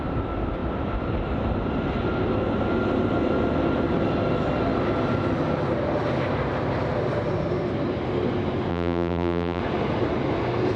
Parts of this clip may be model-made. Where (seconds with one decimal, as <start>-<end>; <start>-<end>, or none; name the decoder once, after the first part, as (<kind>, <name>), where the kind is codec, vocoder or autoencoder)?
8.7-9.6 (vocoder, BigVGAN v2)